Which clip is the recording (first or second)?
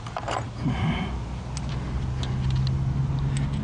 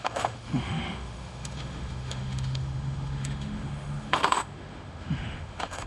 first